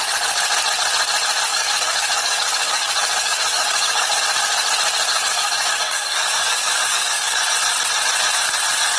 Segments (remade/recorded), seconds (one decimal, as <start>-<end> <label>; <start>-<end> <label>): 0.0-1.5 recorded; 1.5-4.2 remade; 4.2-5.1 recorded; 5.1-7.4 remade; 7.4-9.0 recorded